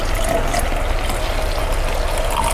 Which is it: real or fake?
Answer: real